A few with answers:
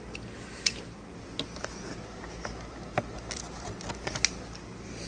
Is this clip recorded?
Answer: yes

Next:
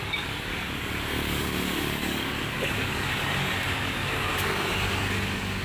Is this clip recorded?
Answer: no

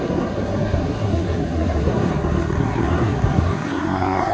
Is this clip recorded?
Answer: no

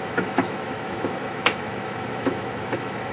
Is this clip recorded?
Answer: no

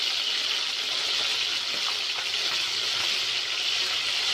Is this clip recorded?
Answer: yes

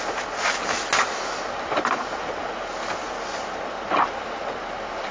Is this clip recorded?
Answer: yes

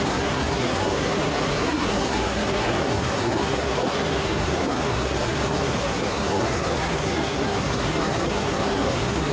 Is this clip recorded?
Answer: no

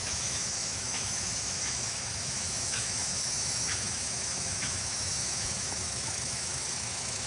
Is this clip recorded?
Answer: no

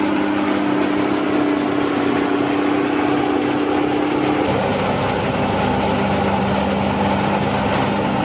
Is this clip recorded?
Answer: yes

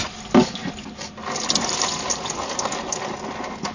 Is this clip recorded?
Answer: yes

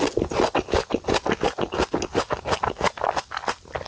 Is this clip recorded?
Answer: yes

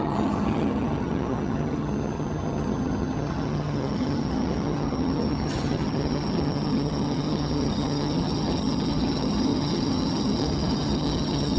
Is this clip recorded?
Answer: no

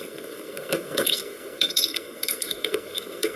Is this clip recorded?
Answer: no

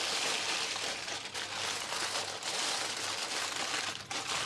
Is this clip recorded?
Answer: yes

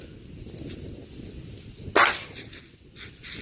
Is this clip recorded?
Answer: yes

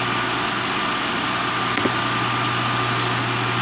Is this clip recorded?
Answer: yes